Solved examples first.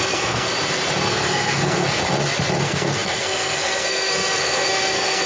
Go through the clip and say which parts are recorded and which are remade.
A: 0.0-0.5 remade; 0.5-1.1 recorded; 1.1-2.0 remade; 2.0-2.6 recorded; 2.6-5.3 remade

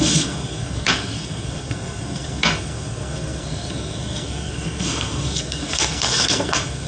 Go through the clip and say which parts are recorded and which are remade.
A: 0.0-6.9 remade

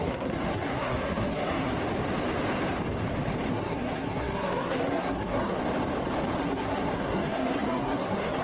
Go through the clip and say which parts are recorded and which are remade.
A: 0.0-1.8 remade; 1.8-3.5 recorded; 3.5-5.6 remade; 5.6-6.4 recorded; 6.4-8.4 remade